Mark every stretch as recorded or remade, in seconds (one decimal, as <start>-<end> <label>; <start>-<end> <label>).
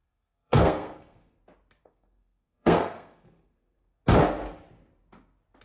0.0-1.4 remade; 1.4-1.8 recorded; 1.8-4.0 remade; 4.0-5.6 recorded